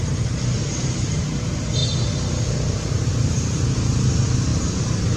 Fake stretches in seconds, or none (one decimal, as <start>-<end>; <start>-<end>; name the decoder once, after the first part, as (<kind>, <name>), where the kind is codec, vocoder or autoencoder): 0.6-1.2 (vocoder, BigVGAN v2); 4.5-5.2